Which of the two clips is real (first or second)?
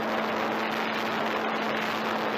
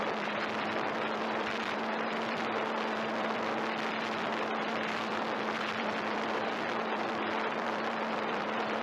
first